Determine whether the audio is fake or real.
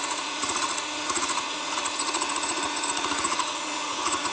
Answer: fake